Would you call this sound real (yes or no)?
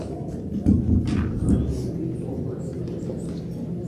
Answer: yes